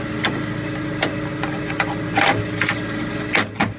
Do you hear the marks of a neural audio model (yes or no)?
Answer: no